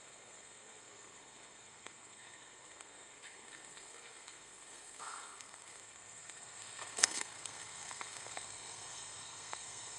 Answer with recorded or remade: remade